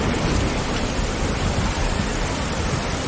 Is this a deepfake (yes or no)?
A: yes